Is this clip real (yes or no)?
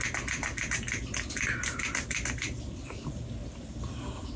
yes